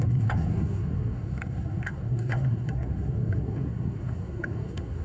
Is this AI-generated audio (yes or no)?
yes